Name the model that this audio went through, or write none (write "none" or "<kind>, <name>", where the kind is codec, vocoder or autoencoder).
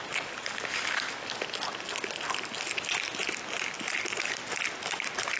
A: none